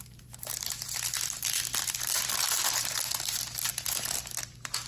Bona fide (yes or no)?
yes